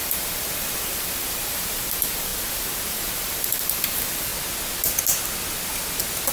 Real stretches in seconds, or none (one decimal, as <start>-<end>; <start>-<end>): 4.3-6.3